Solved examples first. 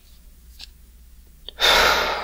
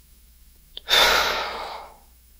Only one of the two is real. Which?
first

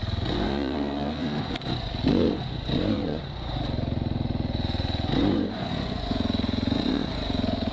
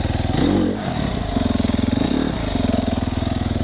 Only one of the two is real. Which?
second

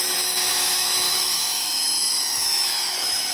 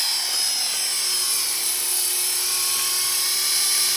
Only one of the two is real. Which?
second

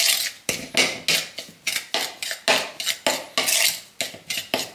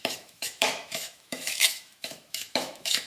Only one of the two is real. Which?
first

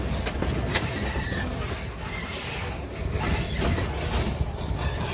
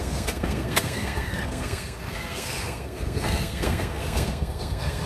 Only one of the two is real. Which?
first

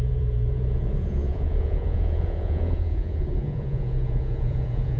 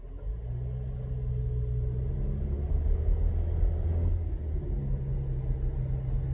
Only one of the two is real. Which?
second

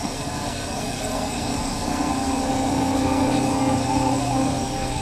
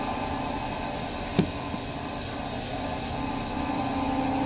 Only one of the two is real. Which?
second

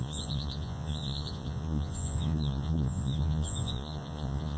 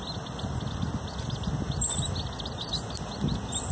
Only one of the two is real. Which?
second